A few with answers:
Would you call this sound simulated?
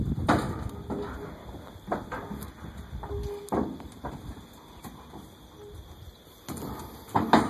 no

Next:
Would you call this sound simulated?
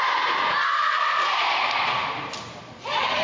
yes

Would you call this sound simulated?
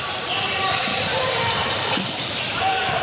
yes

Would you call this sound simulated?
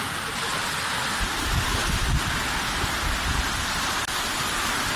no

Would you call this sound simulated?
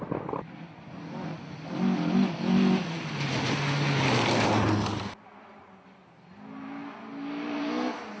no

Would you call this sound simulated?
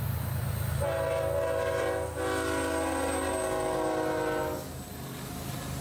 no